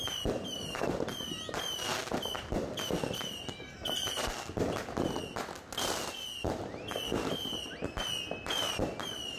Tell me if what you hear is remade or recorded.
recorded